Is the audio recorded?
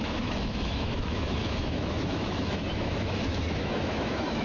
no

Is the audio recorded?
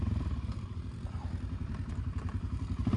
no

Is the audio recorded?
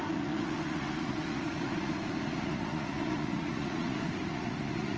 no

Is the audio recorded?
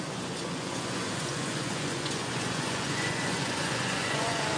no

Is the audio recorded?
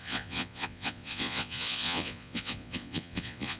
no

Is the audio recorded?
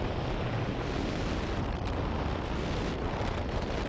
yes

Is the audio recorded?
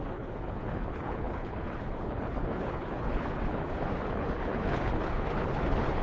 no